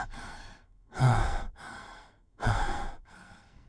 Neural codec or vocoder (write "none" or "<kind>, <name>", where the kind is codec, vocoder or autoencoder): codec, SNAC